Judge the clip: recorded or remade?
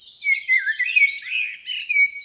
recorded